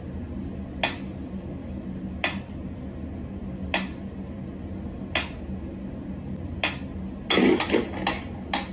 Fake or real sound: real